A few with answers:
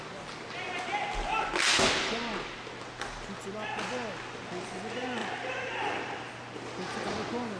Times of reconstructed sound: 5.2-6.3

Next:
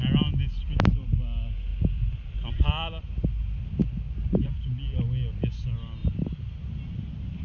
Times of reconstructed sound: 1.7-2.5; 3.8-4.6; 6.0-6.5

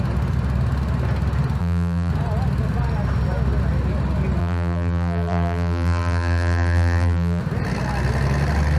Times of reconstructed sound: 1.6-2.1; 4.4-7.4

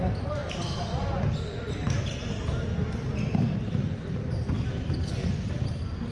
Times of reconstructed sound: none

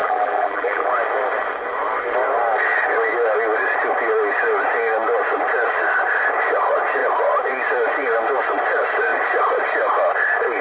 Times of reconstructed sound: 0.0-0.9